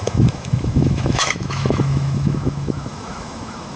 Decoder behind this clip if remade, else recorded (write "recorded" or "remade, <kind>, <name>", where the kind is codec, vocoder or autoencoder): remade, autoencoder, DAC-VAE